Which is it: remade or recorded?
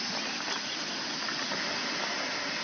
recorded